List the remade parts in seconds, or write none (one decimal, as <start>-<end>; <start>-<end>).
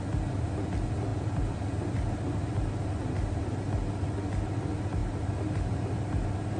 none